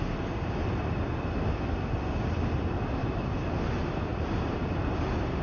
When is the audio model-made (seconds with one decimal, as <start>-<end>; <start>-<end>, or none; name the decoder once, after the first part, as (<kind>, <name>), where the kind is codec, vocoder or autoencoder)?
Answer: 3.0-3.6 (vocoder, BigVGAN v2); 4.1-4.6